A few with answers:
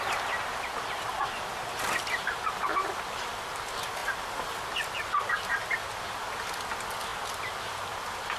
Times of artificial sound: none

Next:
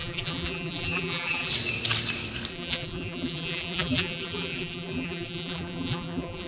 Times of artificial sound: 0.0-1.5 (vocoder, BigVGAN v2); 2.5-6.5

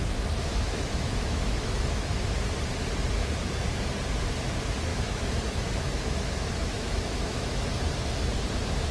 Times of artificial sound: 0.5-2.1 (autoencoder, DAC-VAE); 4.9-7.7

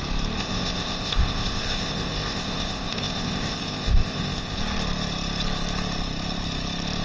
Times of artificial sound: 0.4-4.6 (codec, ZipCodec)

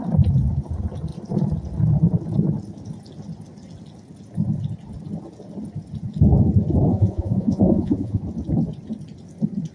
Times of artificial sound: 6.9-8.2 (vocoder, Vocos)

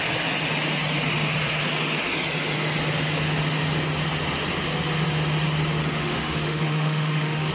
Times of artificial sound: 6.0-7.5 (autoencoder, DAC-VAE)